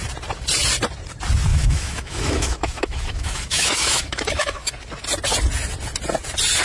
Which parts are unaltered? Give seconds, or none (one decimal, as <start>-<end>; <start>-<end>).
0.0-1.5; 4.7-6.6